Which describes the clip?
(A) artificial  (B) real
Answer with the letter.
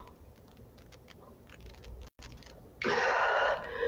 B